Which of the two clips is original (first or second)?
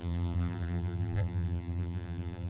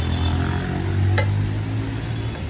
second